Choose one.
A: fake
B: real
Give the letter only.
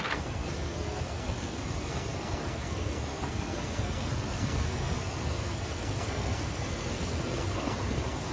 A